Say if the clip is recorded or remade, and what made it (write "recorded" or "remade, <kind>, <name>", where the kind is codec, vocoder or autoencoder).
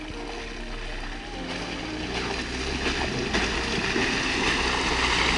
recorded